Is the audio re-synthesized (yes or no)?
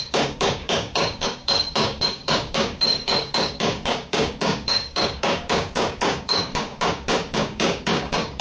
yes